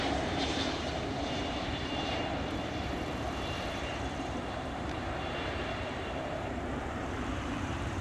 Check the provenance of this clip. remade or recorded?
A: remade